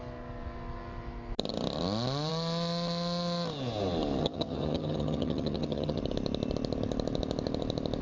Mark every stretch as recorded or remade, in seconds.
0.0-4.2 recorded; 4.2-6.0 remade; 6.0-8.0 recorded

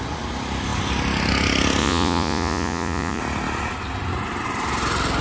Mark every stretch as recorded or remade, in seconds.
0.0-1.8 recorded; 1.8-3.2 remade; 3.2-5.2 recorded

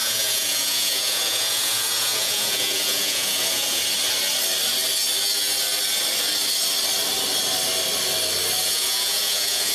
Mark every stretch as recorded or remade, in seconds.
0.0-3.8 remade; 3.8-8.6 recorded; 8.6-9.7 remade